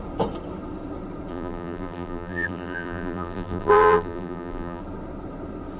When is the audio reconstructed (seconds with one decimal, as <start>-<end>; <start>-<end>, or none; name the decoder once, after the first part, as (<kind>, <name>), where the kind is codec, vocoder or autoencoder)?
1.3-4.8 (vocoder, BigVGAN v2)